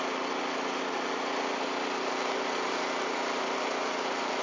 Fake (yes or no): no